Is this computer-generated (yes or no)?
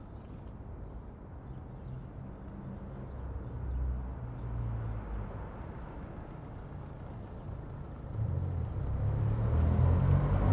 no